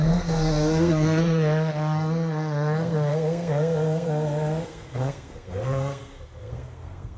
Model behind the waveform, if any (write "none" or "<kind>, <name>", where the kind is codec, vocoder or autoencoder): codec, SNAC